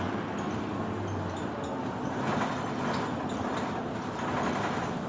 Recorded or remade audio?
recorded